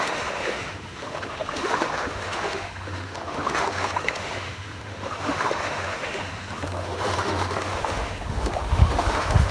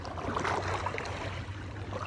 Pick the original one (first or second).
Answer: second